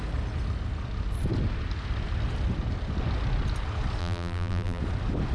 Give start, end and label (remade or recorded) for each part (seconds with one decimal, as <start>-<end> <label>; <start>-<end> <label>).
0.0-4.0 recorded; 4.0-4.8 remade; 4.8-5.3 recorded